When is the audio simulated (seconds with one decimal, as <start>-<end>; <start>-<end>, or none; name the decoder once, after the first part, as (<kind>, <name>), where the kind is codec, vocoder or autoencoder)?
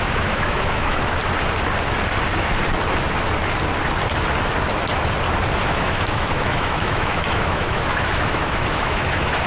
0.0-1.2 (autoencoder, DAC-VAE); 5.6-9.5